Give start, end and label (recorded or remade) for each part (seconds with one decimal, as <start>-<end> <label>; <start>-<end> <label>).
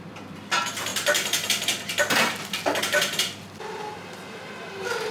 0.0-0.9 remade; 0.9-2.8 recorded; 2.8-5.1 remade